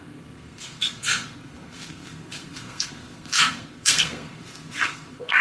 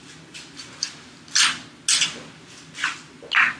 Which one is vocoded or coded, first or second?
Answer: first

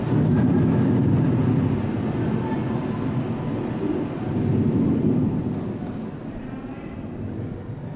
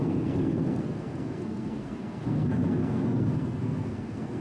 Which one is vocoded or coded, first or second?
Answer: second